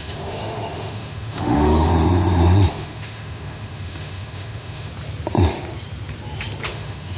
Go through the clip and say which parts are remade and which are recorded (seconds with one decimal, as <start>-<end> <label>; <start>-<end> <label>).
0.0-1.9 remade; 1.9-2.7 recorded; 2.7-4.9 remade; 4.9-6.7 recorded; 6.7-7.2 remade